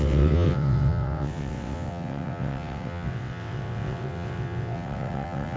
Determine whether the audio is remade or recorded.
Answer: remade